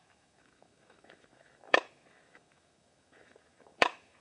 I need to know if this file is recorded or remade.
remade